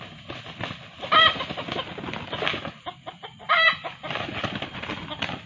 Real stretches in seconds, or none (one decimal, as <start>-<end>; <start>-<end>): none